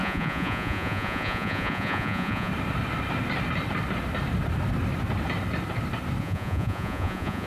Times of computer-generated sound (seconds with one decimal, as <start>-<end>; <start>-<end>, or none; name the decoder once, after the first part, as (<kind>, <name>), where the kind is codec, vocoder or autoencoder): 0.0-2.5 (vocoder, Vocos); 6.2-7.5